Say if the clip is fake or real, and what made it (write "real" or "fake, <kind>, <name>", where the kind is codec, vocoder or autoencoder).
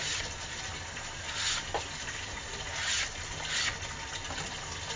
real